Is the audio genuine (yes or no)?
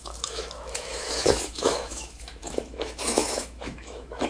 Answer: no